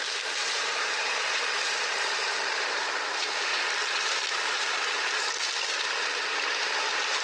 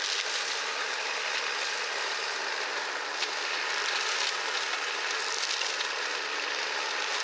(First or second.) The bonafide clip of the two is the second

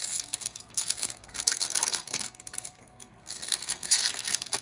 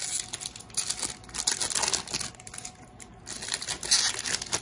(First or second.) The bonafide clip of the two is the second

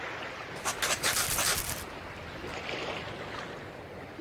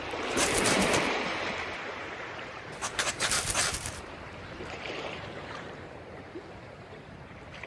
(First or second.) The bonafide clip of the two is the first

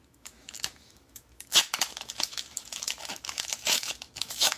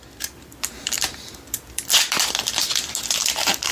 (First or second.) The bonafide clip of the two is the second